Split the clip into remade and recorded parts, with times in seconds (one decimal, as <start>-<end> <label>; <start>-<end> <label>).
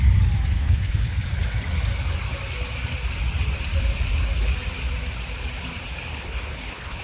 0.0-0.5 recorded; 0.5-1.1 remade; 1.1-6.1 recorded; 6.1-7.0 remade